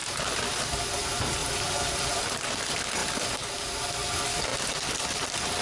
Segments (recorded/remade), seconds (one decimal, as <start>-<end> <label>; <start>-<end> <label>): 0.0-0.9 remade; 0.9-1.4 recorded; 1.4-2.2 remade; 2.2-4.5 recorded; 4.5-5.6 remade